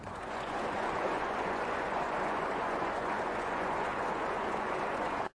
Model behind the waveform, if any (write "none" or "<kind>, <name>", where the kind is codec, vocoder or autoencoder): vocoder, Vocos